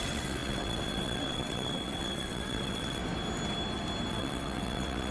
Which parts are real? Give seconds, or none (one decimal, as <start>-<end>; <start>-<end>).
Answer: 3.0-4.1

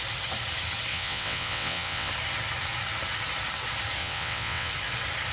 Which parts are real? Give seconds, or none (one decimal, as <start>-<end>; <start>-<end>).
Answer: 0.0-0.9; 2.1-4.0; 4.7-5.3

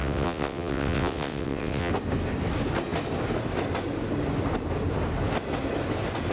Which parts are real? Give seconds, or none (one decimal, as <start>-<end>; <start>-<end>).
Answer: 1.9-6.3

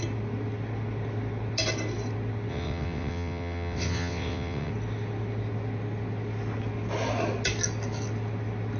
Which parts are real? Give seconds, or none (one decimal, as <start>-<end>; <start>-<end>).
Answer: 0.0-2.5; 4.7-8.8

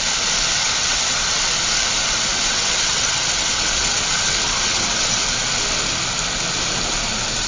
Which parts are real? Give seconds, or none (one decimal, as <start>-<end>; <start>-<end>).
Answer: 0.0-0.6; 1.2-2.3; 5.2-7.5

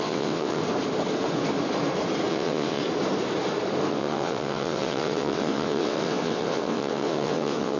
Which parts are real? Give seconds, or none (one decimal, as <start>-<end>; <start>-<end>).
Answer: 0.6-2.3; 2.8-3.9